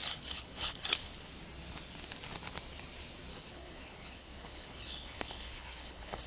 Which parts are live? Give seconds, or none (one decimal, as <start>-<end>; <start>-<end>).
1.3-3.3